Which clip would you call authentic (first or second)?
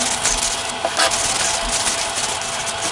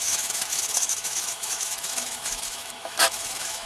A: first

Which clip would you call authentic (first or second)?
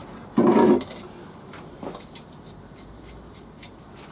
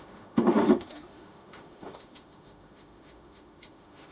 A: first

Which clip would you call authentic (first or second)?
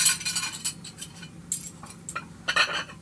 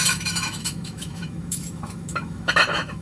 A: first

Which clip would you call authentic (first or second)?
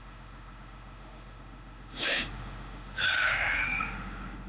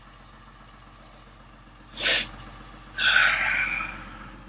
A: second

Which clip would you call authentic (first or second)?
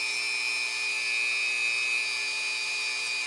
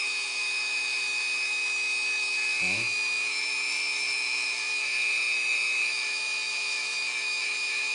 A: first